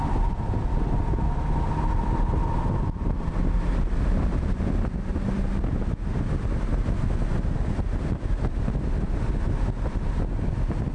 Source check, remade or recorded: recorded